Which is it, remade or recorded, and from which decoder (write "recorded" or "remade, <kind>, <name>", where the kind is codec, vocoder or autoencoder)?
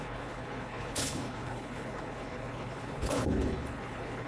remade, codec, HILCodec